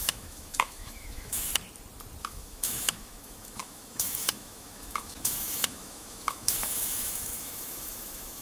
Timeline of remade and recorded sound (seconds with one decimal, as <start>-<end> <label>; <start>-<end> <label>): 0.0-1.5 remade; 1.5-2.2 recorded; 2.2-8.4 remade